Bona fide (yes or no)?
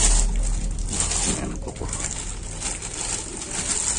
yes